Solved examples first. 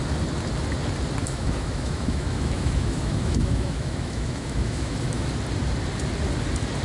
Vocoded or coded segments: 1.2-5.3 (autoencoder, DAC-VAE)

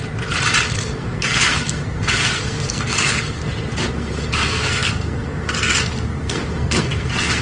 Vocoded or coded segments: 0.7-3.4 (codec, SNAC); 3.9-7.4

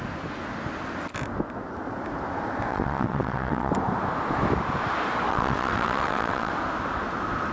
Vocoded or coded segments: 2.7-3.7 (vocoder, WaveNeXt); 5.3-6.5